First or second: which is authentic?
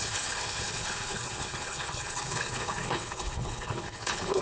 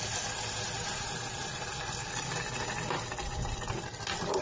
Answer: second